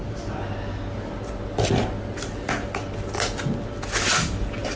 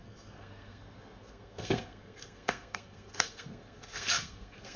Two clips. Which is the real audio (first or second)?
first